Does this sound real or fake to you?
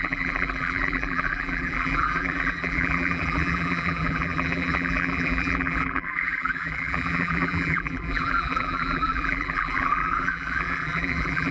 fake